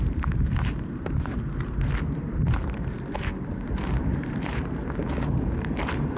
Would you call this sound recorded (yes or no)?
no